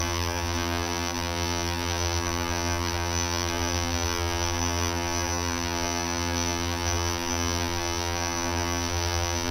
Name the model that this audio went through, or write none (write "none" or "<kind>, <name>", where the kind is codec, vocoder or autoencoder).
vocoder, BigVGAN v2